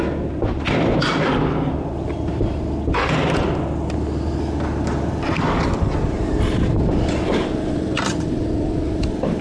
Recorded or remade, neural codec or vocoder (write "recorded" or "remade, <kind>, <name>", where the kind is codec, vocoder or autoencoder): recorded